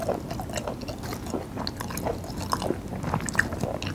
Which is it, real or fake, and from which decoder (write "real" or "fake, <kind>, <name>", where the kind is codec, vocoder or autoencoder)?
real